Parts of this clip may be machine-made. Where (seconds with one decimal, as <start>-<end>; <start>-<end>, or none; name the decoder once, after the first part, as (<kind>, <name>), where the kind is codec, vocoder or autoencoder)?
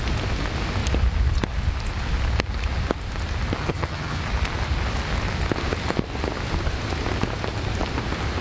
3.6-4.2 (vocoder, HiFi-GAN)